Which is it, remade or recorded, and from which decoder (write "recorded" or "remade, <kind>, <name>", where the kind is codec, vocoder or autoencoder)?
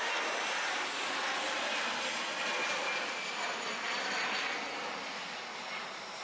recorded